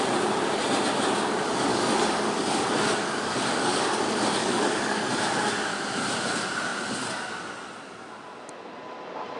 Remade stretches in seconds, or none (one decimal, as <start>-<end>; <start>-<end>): 1.7-3.8; 4.4-5.1